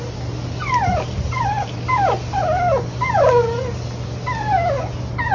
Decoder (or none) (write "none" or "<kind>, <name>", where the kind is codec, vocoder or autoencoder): none